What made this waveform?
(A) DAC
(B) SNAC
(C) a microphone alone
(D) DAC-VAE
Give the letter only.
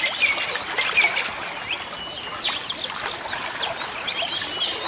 C